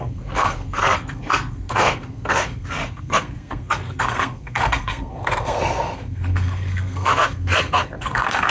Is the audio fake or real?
fake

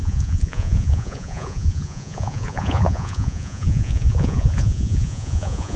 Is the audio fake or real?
fake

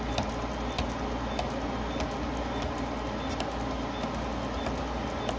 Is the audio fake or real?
real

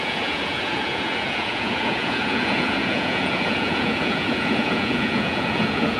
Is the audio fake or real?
fake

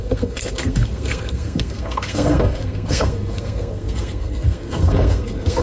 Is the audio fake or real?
fake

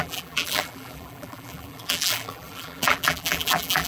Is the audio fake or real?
fake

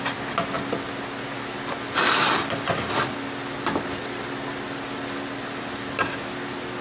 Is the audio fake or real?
real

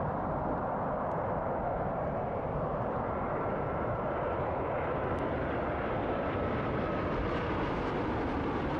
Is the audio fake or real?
real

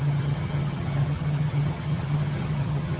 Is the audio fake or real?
fake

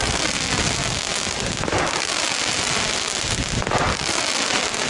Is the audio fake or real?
real